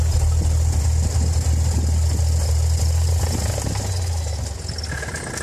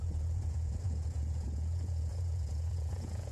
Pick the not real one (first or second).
second